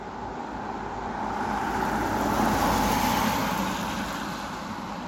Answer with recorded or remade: recorded